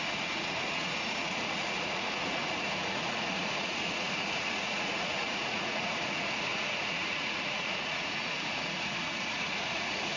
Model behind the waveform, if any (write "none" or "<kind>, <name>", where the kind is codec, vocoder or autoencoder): vocoder, Vocos